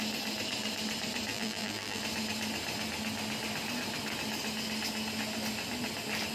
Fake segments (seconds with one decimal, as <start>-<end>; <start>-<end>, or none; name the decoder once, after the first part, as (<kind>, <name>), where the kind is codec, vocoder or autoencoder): 1.3-2.0 (vocoder, BigVGAN v2)